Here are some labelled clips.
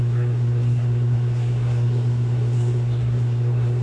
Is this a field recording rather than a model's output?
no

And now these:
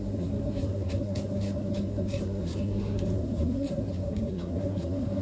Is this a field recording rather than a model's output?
no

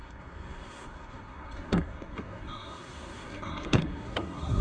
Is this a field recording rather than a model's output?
no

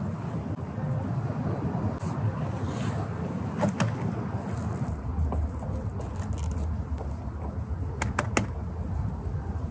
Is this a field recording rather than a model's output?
yes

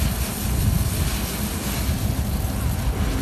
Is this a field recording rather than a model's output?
yes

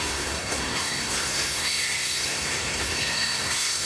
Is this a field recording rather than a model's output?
no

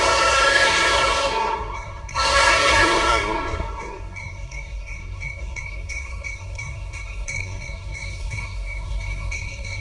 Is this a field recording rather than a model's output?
no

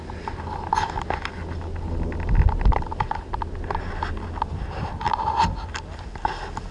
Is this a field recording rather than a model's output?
yes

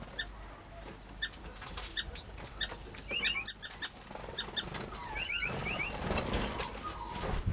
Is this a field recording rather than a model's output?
yes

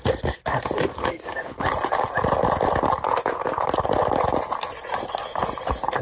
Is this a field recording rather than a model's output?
yes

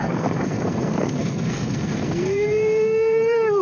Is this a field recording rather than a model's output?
no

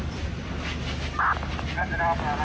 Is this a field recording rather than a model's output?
yes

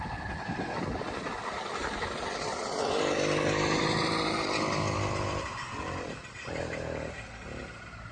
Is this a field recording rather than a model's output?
yes